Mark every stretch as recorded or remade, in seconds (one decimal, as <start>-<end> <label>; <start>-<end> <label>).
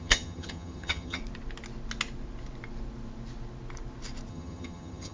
0.0-1.2 remade; 1.2-4.3 recorded; 4.3-5.1 remade